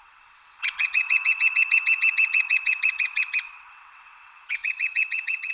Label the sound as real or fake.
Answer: fake